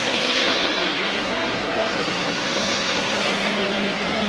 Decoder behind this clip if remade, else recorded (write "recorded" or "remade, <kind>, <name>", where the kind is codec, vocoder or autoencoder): remade, codec, SNAC